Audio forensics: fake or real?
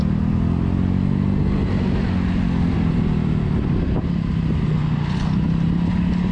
real